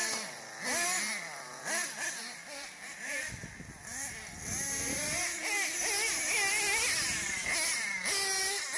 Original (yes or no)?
yes